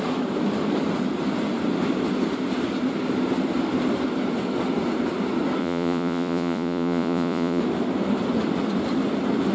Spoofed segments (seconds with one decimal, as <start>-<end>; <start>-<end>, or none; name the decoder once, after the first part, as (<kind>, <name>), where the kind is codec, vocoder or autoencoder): 5.6-7.6 (vocoder, Vocos)